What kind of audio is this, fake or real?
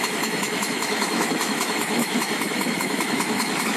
fake